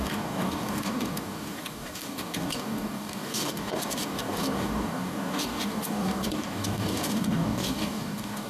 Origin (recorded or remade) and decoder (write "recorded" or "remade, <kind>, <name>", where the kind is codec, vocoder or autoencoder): remade, codec, DAC